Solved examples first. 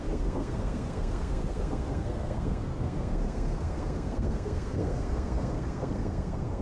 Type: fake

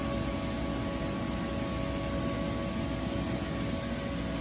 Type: real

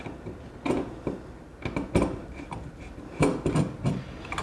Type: real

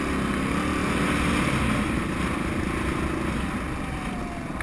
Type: real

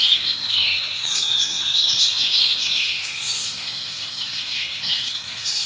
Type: fake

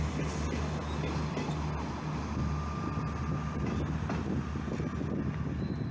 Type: real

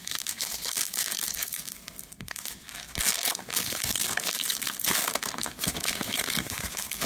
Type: fake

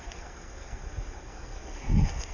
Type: fake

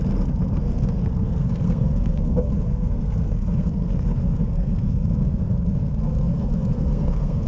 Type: fake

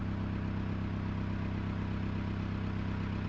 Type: real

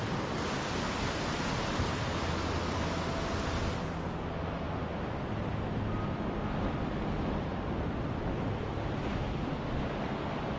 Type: real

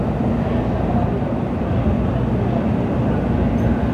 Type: real